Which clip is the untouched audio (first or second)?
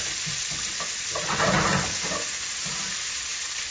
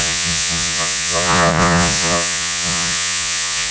first